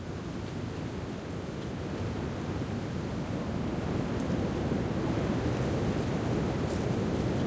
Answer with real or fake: real